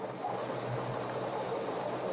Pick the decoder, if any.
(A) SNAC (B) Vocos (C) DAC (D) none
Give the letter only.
D